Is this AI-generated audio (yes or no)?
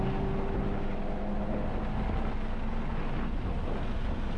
no